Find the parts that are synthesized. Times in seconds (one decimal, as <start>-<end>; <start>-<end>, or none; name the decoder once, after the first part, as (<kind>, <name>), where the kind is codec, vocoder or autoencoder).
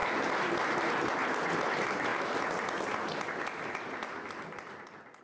none